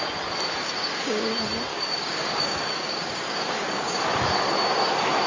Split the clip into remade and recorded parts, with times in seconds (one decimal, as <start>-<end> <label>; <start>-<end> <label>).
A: 0.0-0.6 recorded; 0.6-1.2 remade; 1.2-1.7 recorded; 1.7-4.0 remade; 4.0-5.3 recorded